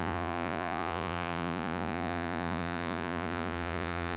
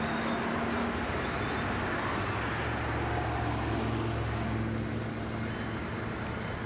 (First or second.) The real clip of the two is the second